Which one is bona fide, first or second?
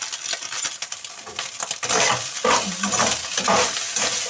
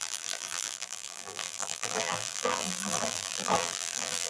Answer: first